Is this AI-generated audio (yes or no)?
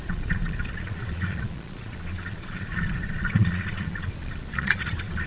yes